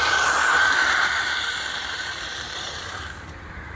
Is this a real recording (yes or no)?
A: no